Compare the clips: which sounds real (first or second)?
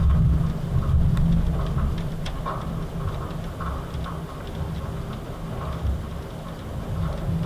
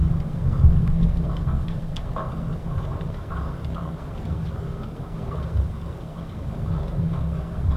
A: first